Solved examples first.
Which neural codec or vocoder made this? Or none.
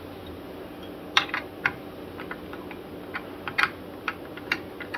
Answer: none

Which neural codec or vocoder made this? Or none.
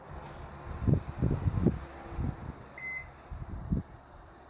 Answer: none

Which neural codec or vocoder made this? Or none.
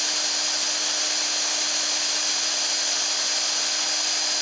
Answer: none